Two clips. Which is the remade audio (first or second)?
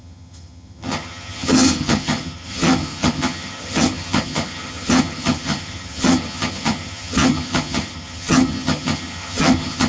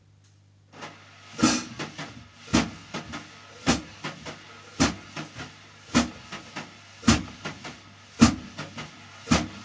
first